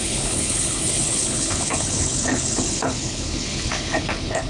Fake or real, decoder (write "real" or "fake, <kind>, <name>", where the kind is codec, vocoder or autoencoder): fake, codec, HILCodec